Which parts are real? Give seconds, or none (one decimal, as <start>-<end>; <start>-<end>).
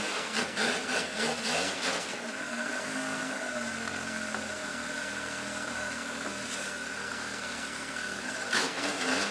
none